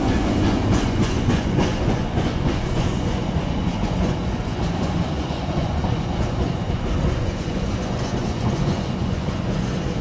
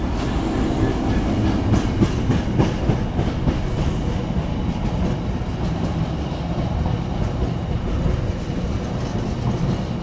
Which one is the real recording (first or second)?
second